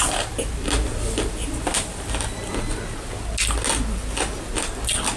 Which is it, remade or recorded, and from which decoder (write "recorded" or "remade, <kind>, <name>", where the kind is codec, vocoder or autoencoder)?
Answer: recorded